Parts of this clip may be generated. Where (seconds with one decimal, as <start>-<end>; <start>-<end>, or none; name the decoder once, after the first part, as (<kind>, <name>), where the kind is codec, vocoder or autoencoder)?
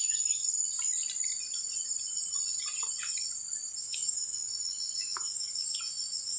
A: 0.0-0.4 (autoencoder, DAC-VAE); 3.8-6.4